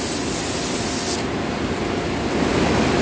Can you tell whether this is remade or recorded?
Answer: recorded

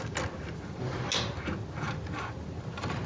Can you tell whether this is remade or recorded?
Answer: recorded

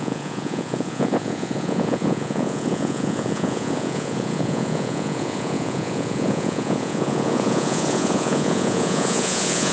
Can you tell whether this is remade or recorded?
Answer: remade